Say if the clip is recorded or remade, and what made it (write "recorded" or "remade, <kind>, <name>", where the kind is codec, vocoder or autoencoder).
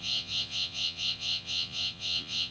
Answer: remade, vocoder, Vocos